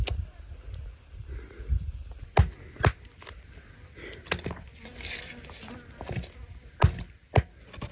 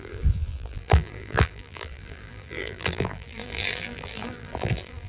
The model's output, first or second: second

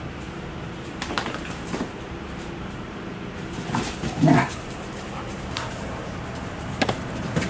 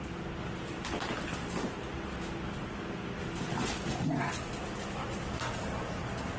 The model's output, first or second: first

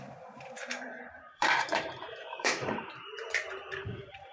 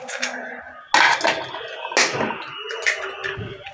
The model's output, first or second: first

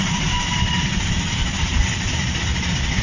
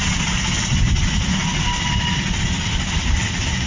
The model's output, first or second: first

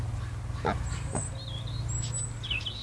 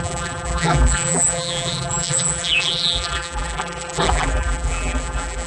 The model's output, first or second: second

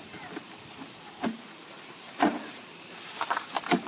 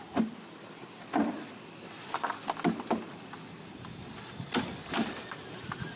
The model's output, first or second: first